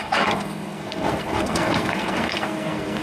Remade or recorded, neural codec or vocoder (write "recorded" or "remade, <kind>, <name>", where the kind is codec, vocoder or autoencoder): remade, codec, SNAC